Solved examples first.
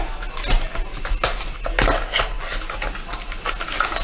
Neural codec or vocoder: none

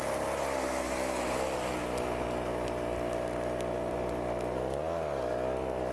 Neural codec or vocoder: none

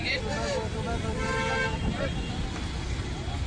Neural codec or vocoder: none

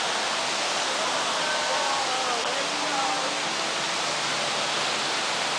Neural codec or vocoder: none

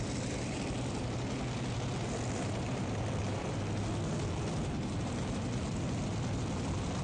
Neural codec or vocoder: none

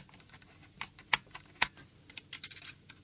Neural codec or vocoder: none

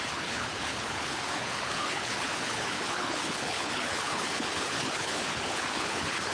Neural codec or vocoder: codec, HILCodec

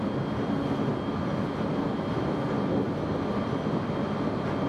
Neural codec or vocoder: none